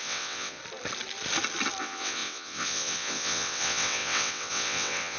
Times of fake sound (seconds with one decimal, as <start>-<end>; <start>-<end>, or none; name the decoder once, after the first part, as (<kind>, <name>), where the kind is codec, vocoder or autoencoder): 0.0-0.6 (vocoder, WaveNeXt); 1.8-5.2